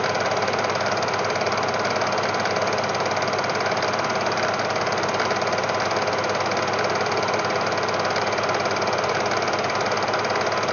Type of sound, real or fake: real